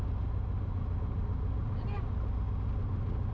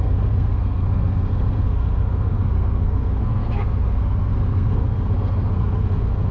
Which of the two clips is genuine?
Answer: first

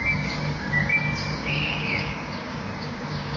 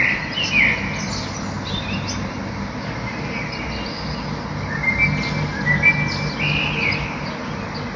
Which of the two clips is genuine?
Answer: second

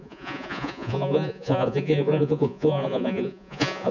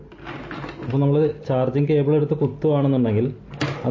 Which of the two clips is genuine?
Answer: second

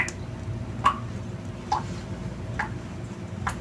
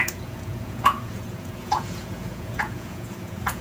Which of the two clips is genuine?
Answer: first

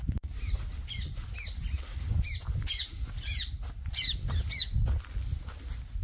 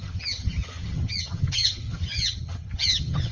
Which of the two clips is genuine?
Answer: first